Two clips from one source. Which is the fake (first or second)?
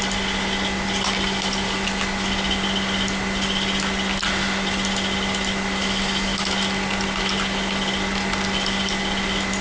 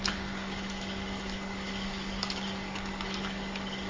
second